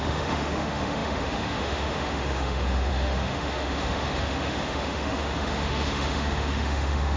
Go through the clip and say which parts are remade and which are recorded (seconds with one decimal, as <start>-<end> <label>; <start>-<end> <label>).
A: 0.0-7.2 remade